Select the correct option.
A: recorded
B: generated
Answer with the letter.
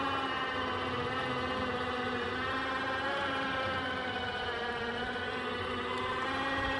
A